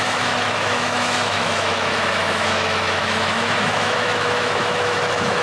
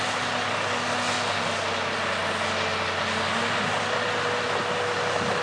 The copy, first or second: first